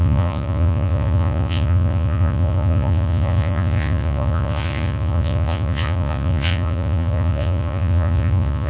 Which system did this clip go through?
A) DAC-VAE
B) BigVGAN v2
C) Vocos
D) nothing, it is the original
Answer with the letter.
C